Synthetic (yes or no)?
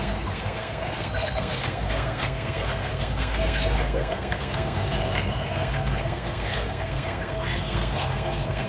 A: yes